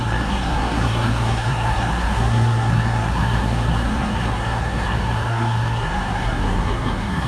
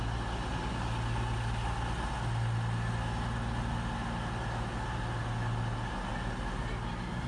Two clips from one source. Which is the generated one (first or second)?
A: first